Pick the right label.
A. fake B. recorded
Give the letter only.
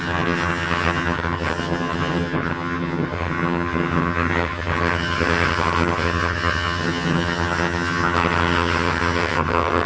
A